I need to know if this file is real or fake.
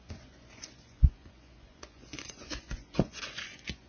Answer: fake